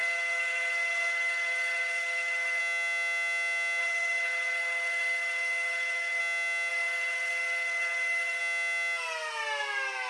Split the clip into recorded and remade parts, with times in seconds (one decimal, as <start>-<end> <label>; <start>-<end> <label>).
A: 0.0-2.6 remade; 2.6-3.8 recorded; 3.8-6.2 remade; 6.2-6.7 recorded; 6.7-8.4 remade; 8.4-10.1 recorded